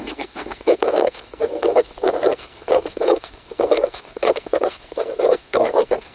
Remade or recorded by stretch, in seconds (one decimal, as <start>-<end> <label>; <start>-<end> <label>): 0.0-6.1 remade